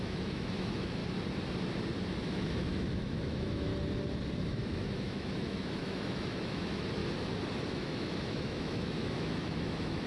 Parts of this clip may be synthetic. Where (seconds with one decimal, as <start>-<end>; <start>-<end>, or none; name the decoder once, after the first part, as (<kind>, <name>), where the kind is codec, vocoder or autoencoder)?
0.0-1.0 (autoencoder, DAC-VAE); 2.1-3.7; 4.4-7.0; 7.7-10.1